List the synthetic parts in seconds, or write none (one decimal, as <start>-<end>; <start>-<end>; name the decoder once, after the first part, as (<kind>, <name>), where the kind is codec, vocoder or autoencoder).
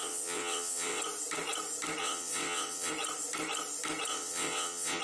0.0-1.0 (vocoder, WaveNeXt); 2.0-2.9; 4.1-5.0